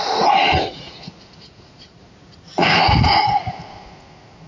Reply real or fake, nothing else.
fake